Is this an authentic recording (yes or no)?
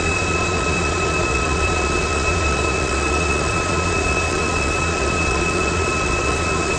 no